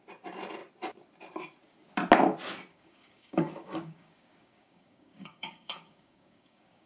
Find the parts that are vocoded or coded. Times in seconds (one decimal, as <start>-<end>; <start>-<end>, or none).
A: 2.7-6.9